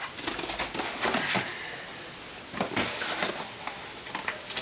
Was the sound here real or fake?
real